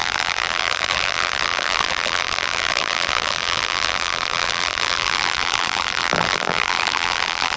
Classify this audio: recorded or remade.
remade